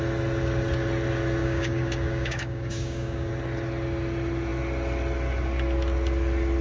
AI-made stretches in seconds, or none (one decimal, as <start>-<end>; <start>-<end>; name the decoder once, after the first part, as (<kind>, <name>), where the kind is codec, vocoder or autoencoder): 1.4-3.3 (codec, DAC)